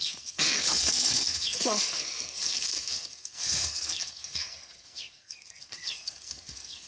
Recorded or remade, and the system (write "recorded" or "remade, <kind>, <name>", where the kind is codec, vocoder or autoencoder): remade, codec, SNAC